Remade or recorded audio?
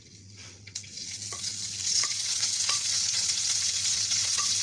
remade